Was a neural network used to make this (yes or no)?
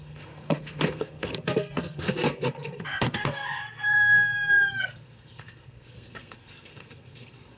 yes